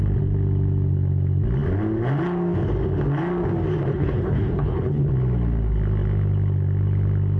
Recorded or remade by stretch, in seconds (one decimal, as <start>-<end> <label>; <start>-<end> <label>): 0.0-3.9 recorded; 3.9-5.0 remade; 5.0-7.4 recorded

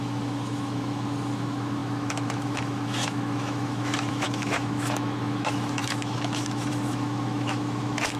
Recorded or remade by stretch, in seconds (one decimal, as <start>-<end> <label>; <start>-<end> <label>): 0.0-8.2 remade

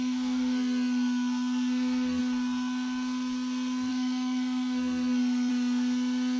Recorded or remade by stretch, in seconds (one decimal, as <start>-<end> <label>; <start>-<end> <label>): 0.0-2.2 remade; 2.2-3.9 recorded; 3.9-5.5 remade; 5.5-6.4 recorded

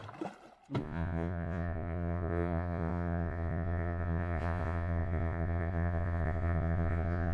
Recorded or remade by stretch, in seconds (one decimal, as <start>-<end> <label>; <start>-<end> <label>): 0.0-0.8 recorded; 0.8-7.3 remade

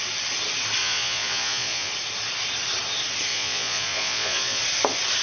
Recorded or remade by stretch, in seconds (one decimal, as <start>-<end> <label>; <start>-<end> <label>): 0.0-0.8 recorded; 0.8-1.9 remade; 1.9-3.3 recorded; 3.3-4.6 remade; 4.6-5.2 recorded

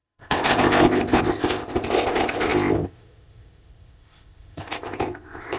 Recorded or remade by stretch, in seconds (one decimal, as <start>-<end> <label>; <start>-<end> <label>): 0.0-5.6 remade

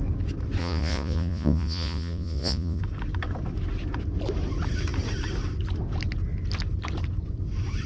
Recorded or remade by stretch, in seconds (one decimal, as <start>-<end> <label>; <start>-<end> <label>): 0.0-0.6 recorded; 0.6-2.8 remade; 2.8-7.9 recorded